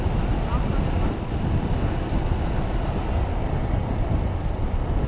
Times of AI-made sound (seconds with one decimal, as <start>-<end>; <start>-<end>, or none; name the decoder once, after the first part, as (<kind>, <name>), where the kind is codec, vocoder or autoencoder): none